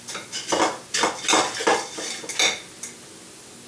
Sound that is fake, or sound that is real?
real